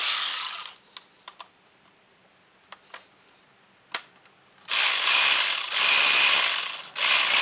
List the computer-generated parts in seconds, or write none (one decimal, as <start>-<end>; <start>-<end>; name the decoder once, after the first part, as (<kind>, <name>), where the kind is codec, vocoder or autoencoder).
none